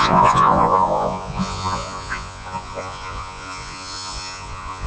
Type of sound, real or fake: fake